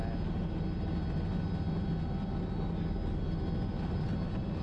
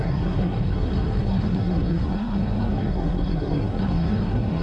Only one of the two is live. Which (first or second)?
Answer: first